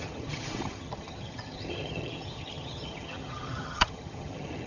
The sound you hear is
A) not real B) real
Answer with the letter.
A